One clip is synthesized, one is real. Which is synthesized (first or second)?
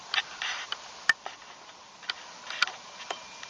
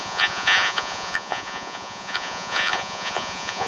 second